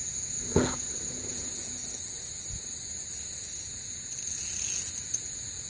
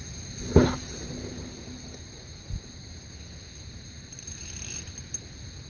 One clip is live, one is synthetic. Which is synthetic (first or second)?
first